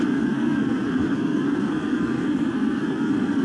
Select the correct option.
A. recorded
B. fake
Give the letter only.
B